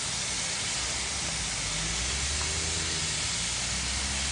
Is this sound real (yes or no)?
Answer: yes